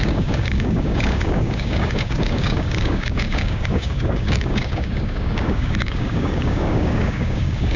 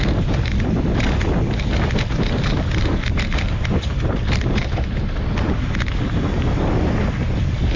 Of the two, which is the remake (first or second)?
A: first